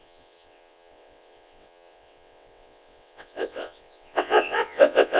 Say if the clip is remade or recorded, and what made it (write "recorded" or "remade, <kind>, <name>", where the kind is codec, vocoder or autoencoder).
remade, vocoder, WaveNeXt